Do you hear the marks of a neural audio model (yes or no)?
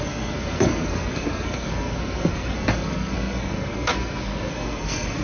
yes